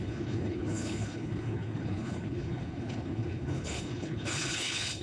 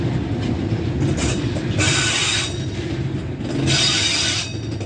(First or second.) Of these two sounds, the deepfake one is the first